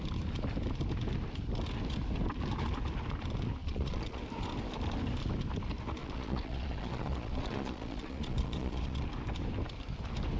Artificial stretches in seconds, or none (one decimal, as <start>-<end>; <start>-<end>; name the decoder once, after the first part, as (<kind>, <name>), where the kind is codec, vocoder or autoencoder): 3.6-4.2 (vocoder, Vocos); 6.0-9.0